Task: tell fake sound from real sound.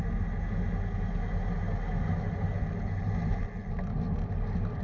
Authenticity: real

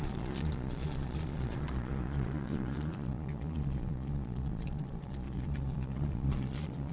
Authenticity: fake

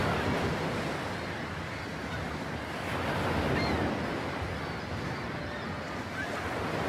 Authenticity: real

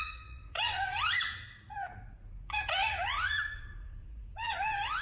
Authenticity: fake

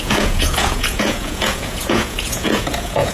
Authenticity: fake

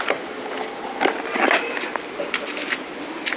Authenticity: real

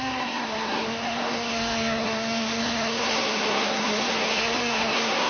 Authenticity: fake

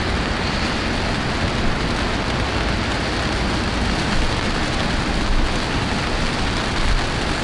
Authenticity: real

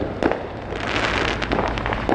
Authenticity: real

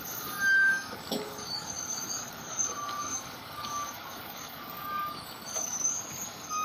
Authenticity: fake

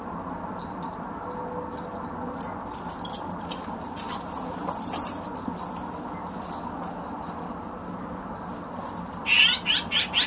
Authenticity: real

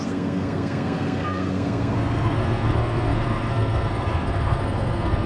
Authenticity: fake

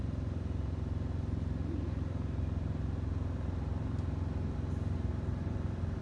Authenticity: real